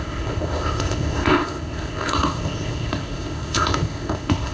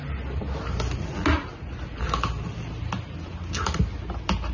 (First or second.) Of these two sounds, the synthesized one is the first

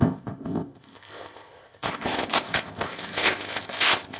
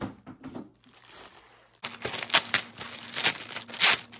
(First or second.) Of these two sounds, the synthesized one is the first